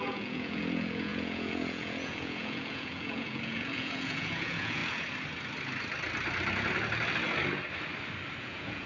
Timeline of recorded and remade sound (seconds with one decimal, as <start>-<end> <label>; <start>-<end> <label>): 0.0-4.8 remade; 4.8-8.4 recorded; 8.4-8.9 remade